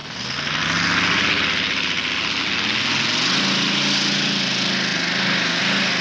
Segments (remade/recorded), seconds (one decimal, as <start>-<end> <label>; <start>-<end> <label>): 0.0-6.0 recorded